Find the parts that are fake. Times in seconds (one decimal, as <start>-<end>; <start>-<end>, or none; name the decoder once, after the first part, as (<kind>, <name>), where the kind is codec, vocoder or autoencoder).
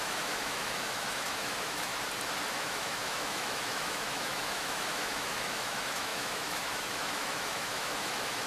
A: 0.0-1.9 (autoencoder, DAC-VAE); 2.5-8.5